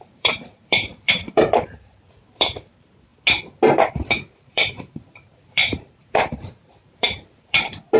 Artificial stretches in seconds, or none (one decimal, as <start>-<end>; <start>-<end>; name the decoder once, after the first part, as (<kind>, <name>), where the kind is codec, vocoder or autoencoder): 0.0-3.1 (vocoder, BigVGAN v2); 4.3-8.0